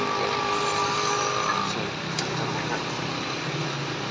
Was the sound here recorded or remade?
recorded